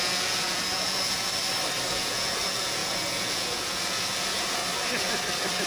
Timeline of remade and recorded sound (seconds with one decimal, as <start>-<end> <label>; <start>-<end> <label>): 0.0-1.3 remade; 1.3-1.9 recorded; 1.9-4.6 remade; 4.6-5.7 recorded